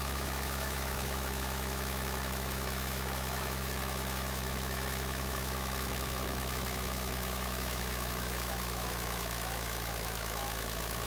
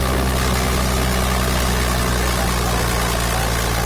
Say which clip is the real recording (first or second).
second